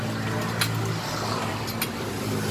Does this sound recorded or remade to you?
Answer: recorded